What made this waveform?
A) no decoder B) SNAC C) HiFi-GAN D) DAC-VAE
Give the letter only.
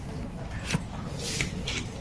A